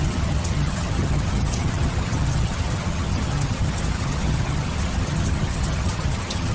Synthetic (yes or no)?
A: yes